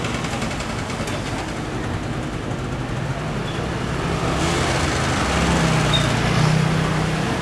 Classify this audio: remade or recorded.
recorded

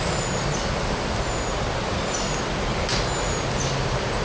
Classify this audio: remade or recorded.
recorded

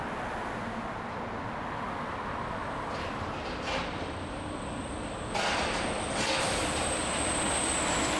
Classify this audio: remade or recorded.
recorded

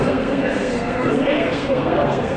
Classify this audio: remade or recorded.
remade